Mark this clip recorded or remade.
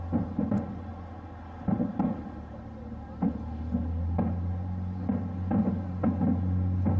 recorded